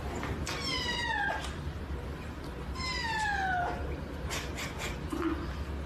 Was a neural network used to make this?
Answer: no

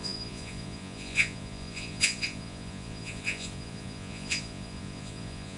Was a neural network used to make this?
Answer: yes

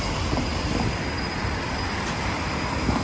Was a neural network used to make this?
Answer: no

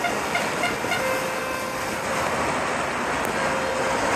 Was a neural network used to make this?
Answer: no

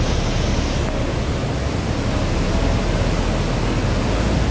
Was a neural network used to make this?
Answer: no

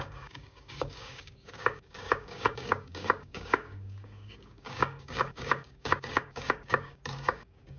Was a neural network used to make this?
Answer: yes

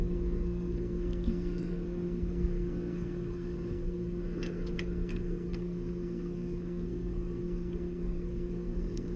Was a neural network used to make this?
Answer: yes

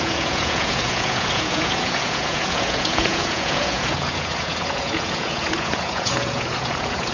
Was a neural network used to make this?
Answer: yes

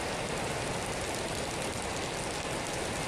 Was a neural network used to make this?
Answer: no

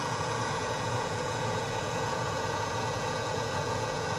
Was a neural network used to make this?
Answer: yes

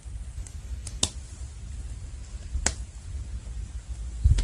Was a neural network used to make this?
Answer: no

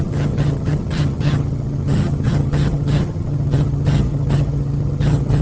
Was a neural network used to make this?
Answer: yes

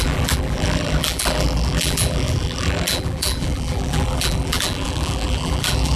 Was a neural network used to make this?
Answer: yes